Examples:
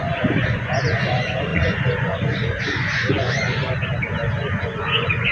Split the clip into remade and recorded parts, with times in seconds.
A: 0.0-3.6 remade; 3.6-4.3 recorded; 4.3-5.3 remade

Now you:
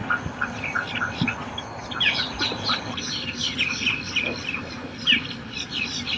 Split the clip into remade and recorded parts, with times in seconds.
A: 0.0-6.2 recorded

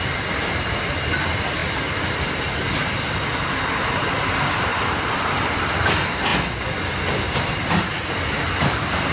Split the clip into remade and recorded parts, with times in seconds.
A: 0.0-9.1 recorded

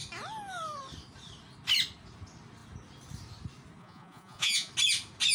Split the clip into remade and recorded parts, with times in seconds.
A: 0.0-3.8 recorded; 3.8-4.7 remade; 4.7-5.3 recorded

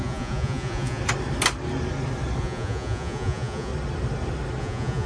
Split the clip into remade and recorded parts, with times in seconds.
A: 0.0-1.0 remade; 1.0-2.4 recorded; 2.4-3.7 remade; 3.7-4.6 recorded; 4.6-5.1 remade

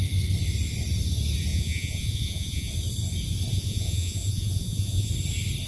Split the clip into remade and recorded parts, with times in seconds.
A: 0.0-1.5 recorded; 1.5-2.7 remade; 2.7-3.5 recorded; 3.5-5.1 remade; 5.1-5.7 recorded

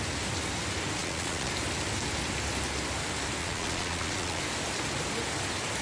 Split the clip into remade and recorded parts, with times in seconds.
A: 0.0-1.0 recorded; 1.0-1.5 remade; 1.5-3.4 recorded; 3.4-4.4 remade; 4.4-5.8 recorded